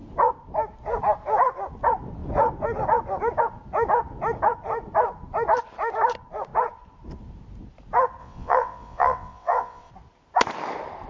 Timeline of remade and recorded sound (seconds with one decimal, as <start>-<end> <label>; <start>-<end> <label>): 0.0-8.2 recorded; 8.2-9.9 remade; 9.9-11.1 recorded